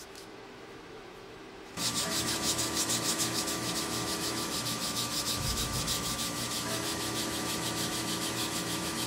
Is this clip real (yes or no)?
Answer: no